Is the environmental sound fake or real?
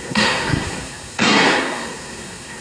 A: fake